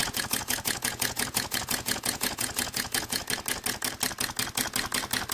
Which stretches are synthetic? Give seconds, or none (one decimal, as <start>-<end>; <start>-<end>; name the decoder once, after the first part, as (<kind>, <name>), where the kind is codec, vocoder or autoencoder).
0.0-3.2 (vocoder, Vocos)